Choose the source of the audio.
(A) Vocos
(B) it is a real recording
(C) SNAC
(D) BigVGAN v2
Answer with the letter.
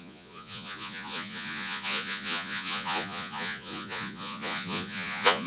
A